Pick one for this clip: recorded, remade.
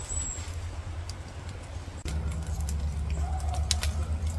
recorded